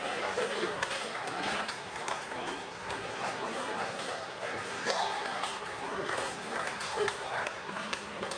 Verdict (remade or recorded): remade